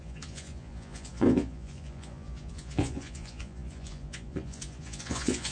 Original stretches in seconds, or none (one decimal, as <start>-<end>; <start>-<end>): none